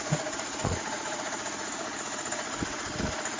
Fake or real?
fake